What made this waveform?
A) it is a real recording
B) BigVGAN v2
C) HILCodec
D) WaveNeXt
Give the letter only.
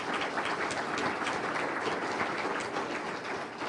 A